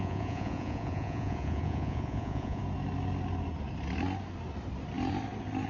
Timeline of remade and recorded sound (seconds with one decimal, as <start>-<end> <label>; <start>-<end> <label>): 0.0-2.6 remade; 2.6-5.7 recorded